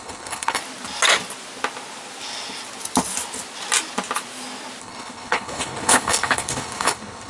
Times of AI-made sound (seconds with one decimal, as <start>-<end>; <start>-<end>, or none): 0.0-0.6; 4.8-7.3